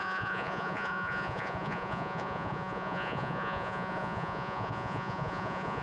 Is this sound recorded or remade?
remade